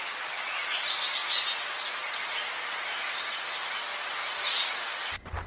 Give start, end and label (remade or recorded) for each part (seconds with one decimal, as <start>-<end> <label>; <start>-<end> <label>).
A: 0.0-5.5 recorded